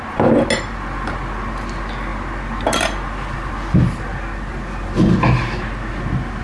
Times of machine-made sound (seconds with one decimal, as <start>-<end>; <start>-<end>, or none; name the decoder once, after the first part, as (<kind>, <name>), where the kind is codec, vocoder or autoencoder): none